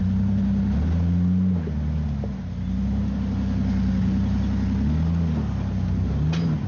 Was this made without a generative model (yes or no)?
yes